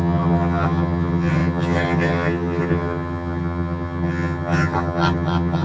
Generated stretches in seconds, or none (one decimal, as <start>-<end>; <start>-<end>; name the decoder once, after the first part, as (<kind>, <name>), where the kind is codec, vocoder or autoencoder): 0.0-5.6 (vocoder, HiFi-GAN)